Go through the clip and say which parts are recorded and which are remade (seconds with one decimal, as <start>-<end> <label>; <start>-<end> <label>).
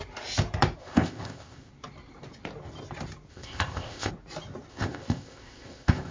0.0-0.8 recorded; 0.8-1.7 remade; 1.7-3.3 recorded; 3.3-4.1 remade; 4.1-4.7 recorded; 4.7-6.1 remade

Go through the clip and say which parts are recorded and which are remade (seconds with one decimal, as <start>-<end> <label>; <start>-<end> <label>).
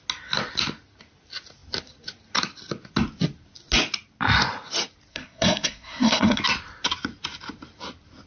0.0-5.1 recorded; 5.1-6.4 remade; 6.4-8.3 recorded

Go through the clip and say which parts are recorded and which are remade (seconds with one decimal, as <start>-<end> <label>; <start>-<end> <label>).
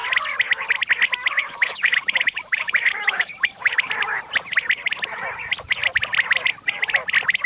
0.0-1.4 recorded; 1.4-3.9 remade; 3.9-7.5 recorded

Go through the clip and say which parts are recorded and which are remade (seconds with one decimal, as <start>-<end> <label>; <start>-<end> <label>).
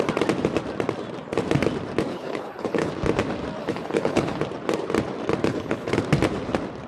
0.0-2.1 recorded; 2.1-2.9 remade; 2.9-3.6 recorded; 3.6-4.4 remade; 4.4-5.5 recorded; 5.5-6.0 remade; 6.0-6.9 recorded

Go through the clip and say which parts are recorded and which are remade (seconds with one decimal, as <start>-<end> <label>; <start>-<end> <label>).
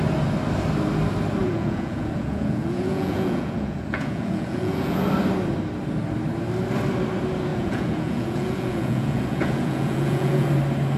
0.0-1.4 recorded; 1.4-5.1 remade; 5.1-7.5 recorded; 7.5-10.5 remade; 10.5-11.0 recorded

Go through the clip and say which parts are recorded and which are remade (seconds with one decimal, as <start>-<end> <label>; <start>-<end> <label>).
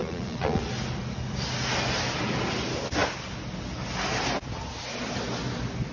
0.0-0.6 remade; 0.6-5.9 recorded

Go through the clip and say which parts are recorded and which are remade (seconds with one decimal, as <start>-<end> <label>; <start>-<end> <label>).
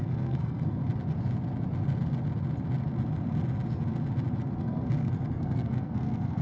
0.0-0.8 remade; 0.8-4.6 recorded; 4.6-6.4 remade